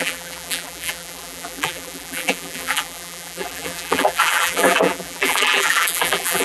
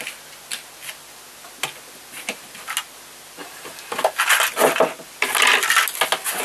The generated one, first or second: first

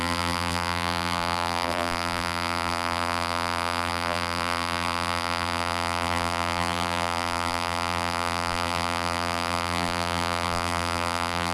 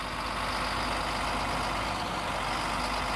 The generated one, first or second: first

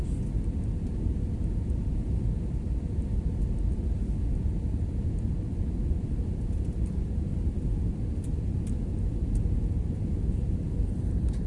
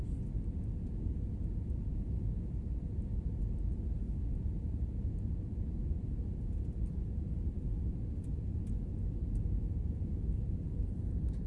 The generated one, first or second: first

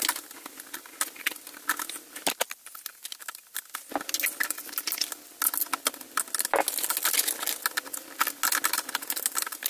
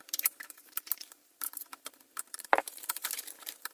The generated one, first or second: second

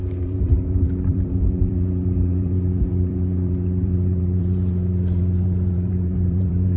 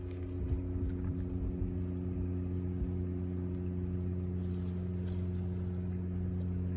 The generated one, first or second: first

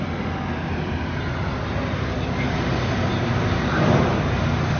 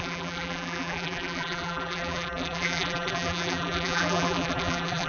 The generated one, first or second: second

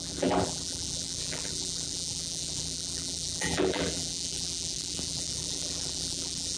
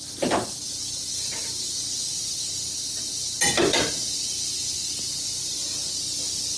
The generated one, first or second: first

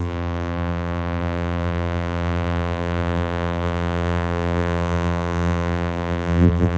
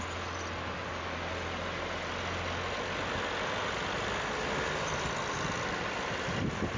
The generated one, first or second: first